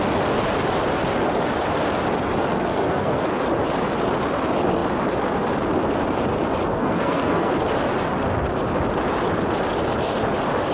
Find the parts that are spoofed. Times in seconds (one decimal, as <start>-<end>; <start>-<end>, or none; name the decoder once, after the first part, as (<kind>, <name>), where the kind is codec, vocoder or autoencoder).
2.5-3.2 (codec, SNAC); 6.7-7.5